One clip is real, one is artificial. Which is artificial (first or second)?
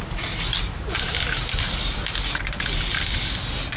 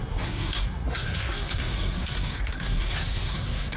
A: second